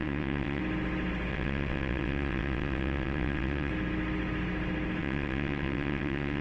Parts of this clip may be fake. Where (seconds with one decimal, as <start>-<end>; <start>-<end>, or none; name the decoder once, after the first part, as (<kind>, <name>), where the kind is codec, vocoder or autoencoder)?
0.0-0.6 (vocoder, WaveNeXt); 1.3-3.7; 5.0-6.4